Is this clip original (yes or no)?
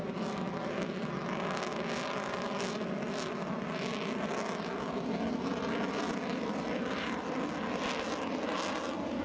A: yes